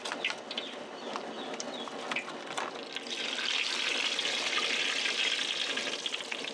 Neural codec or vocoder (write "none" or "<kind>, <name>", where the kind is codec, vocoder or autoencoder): none